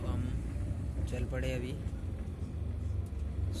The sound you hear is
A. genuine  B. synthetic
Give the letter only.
A